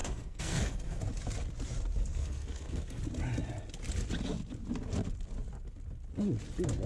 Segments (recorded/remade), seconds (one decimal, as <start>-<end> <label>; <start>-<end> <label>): 0.0-1.0 remade; 1.0-2.1 recorded; 2.1-3.0 remade; 3.0-6.9 recorded